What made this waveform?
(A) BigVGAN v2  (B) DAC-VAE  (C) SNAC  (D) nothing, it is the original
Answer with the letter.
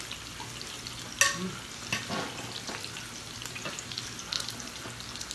D